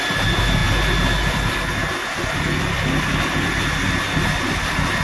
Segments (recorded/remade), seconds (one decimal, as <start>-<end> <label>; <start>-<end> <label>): 0.0-5.0 recorded